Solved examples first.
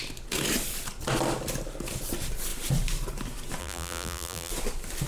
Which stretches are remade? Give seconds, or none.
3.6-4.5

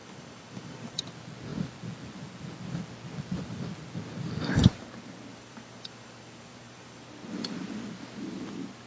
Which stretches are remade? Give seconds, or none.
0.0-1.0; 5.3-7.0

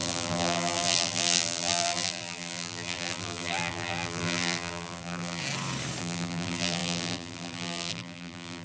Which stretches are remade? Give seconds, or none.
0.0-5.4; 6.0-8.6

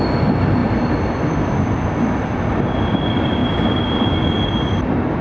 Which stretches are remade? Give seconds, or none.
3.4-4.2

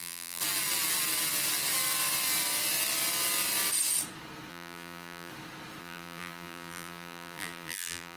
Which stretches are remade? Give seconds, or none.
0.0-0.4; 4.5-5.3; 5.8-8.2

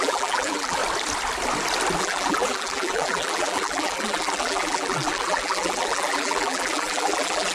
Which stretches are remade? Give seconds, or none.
0.0-0.8; 2.0-7.5